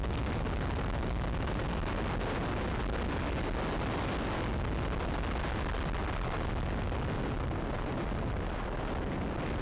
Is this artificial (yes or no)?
no